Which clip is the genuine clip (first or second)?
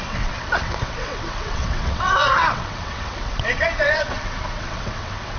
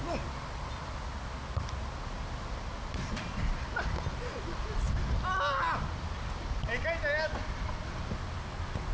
second